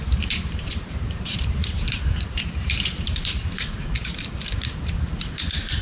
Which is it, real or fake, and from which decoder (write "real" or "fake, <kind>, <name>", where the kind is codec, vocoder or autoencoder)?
fake, vocoder, BigVGAN v2